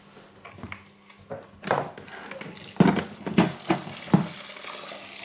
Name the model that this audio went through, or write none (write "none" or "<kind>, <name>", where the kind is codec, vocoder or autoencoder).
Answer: none